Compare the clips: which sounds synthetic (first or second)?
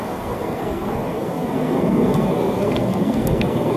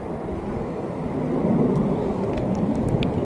first